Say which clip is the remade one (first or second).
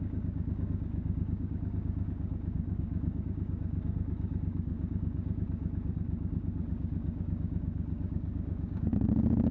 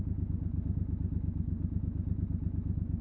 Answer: first